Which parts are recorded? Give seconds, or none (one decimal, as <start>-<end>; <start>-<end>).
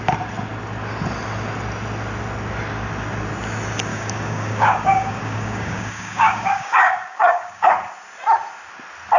0.0-3.9; 7.7-9.2